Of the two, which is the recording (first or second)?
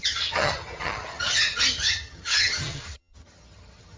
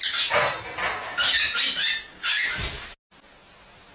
second